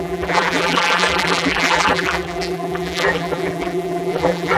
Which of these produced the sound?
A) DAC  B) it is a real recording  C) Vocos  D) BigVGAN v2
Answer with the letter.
D